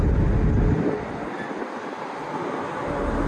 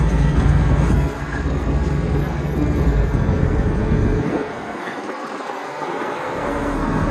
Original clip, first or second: first